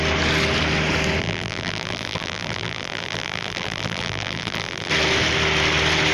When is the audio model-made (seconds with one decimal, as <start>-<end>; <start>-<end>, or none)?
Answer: 1.2-4.9